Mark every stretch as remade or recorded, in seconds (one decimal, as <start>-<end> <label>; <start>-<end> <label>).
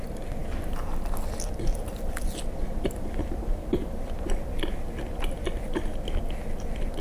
0.0-7.0 recorded